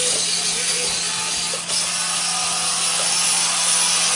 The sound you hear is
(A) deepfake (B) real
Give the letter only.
B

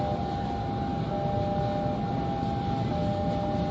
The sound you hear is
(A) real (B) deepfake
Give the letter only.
A